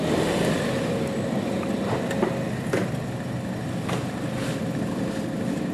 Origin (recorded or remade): recorded